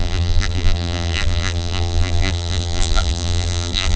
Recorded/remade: remade